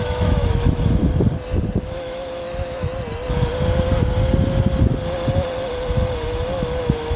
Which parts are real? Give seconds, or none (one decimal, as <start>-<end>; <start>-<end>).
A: 1.0-1.8; 2.9-6.8